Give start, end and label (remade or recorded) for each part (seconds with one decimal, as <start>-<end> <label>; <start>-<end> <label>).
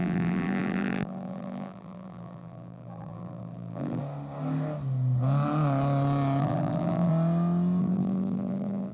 0.0-4.0 remade; 4.0-6.4 recorded; 6.4-7.1 remade; 7.1-7.8 recorded; 7.8-8.9 remade